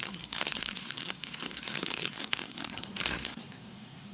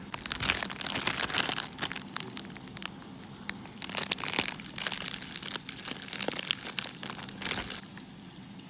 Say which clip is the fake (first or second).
first